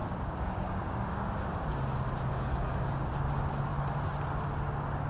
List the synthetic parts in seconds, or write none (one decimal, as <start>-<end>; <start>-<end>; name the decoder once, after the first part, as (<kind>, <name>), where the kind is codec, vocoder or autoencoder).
0.0-1.8 (codec, DAC); 2.3-3.1